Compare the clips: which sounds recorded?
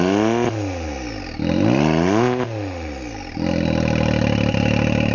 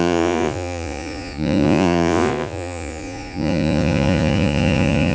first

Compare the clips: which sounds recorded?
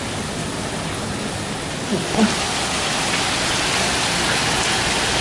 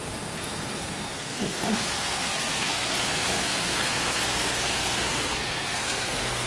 first